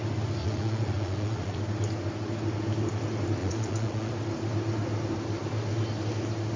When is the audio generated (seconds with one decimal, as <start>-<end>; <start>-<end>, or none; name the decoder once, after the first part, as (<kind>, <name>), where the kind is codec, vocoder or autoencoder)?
0.4-1.6 (vocoder, Vocos); 3.4-4.1